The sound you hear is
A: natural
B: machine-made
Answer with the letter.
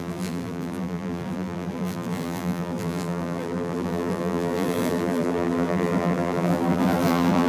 B